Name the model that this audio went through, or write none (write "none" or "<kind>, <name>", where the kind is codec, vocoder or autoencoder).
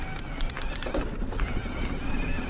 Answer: none